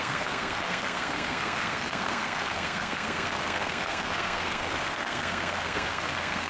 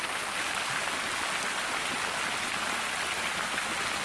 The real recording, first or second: second